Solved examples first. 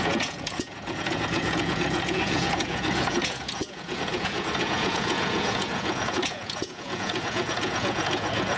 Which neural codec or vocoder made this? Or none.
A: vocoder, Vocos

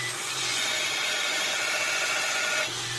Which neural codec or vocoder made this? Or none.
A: vocoder, Vocos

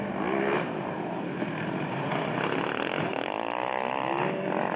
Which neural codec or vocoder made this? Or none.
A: none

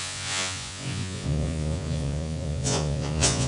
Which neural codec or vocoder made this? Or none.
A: vocoder, Vocos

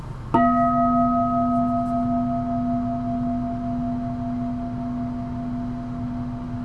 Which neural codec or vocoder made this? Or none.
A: none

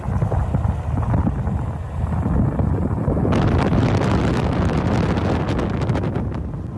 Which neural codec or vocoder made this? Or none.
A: none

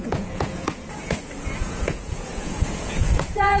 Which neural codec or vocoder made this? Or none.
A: vocoder, Vocos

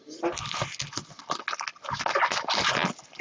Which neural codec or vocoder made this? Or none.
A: none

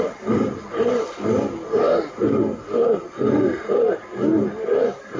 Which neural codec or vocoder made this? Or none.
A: none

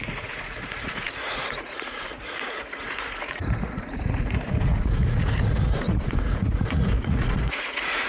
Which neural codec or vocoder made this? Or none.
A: vocoder, Vocos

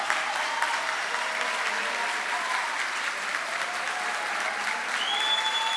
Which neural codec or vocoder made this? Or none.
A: none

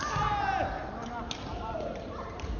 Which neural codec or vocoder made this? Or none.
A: none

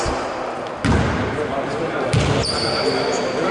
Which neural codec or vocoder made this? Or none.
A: none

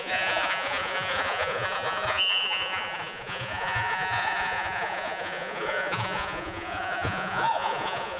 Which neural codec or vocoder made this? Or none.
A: vocoder, Vocos